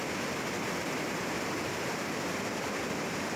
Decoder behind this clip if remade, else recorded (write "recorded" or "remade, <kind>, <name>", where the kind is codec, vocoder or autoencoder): recorded